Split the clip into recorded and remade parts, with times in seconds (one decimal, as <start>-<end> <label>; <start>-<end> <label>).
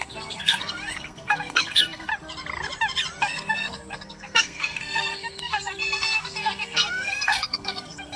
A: 0.0-2.1 remade; 2.1-3.2 recorded; 3.2-8.2 remade